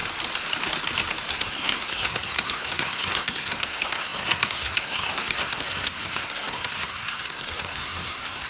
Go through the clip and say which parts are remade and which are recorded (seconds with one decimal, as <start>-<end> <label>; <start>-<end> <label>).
0.0-1.3 recorded; 1.3-8.5 remade